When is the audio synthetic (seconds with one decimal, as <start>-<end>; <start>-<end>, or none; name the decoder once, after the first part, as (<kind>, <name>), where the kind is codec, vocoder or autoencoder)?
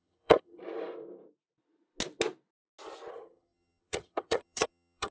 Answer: 0.0-0.6 (vocoder, HiFi-GAN); 3.1-5.1